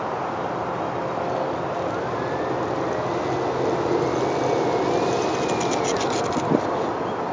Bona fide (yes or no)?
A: yes